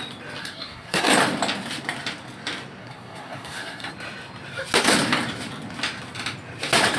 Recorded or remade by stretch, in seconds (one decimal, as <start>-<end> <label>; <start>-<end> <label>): 0.0-0.4 recorded; 0.4-1.1 remade; 1.1-2.8 recorded; 2.8-3.9 remade; 3.9-7.0 recorded